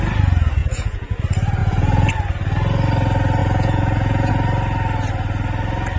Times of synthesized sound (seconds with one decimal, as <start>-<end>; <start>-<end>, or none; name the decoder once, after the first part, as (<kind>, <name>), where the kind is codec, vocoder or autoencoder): 0.6-1.2 (vocoder, Vocos); 1.6-2.1; 3.4-4.3

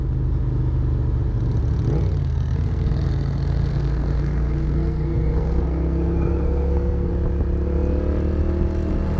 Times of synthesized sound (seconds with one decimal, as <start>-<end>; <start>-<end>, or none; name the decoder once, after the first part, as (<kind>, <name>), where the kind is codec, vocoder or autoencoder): 2.2-7.1 (codec, SNAC)

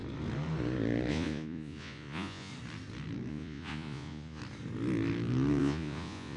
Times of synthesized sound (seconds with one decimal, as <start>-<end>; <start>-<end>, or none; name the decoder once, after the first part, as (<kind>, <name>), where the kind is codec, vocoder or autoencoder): 1.1-2.5 (vocoder, Vocos); 3.3-4.4; 5.6-6.4

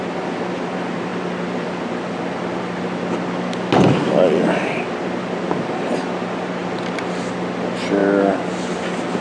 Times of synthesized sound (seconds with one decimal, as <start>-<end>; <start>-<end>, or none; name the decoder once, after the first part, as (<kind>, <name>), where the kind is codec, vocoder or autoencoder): none

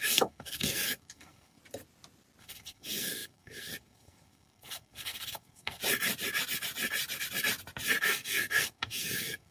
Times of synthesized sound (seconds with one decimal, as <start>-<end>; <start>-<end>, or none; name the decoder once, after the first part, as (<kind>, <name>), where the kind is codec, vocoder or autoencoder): 0.0-1.6 (codec, SNAC); 2.4-5.8; 8.0-9.5

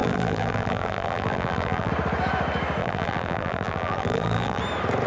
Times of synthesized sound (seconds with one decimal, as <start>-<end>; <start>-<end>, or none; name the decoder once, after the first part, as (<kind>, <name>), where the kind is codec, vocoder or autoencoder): 0.0-1.9 (vocoder, BigVGAN v2); 2.8-4.6

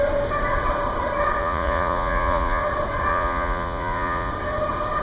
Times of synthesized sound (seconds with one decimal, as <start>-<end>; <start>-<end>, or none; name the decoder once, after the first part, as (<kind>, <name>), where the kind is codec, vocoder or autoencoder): 1.4-2.6 (vocoder, Vocos); 3.1-4.3

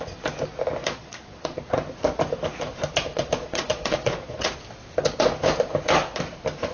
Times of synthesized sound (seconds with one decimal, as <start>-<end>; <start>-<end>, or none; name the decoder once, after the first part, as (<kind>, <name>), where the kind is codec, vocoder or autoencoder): 0.8-1.7 (vocoder, Vocos); 3.1-4.5